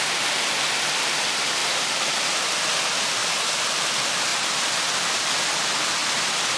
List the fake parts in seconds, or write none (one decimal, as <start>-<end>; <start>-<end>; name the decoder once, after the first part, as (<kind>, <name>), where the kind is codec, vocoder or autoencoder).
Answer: 1.6-2.3 (vocoder, BigVGAN v2); 3.2-3.7

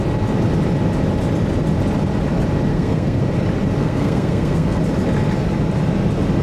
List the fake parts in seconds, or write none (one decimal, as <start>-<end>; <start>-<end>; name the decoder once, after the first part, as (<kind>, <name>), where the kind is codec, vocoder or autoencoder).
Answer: 2.7-3.2 (codec, SNAC); 3.8-4.8

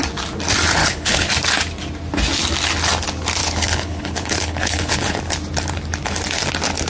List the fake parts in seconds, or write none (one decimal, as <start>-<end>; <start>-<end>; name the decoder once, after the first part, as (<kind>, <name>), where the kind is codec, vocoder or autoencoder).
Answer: 0.8-1.3 (codec, HILCodec); 3.4-5.2